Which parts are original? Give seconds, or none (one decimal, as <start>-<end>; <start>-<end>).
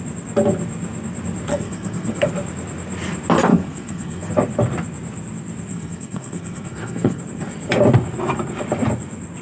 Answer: 0.0-1.5; 2.3-3.5; 4.3-5.7; 7.2-9.4